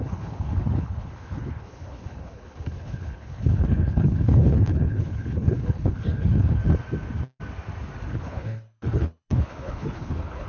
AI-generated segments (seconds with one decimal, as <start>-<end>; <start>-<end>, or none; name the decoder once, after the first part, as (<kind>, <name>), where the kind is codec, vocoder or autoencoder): 0.0-6.6 (codec, HILCodec); 8.1-10.5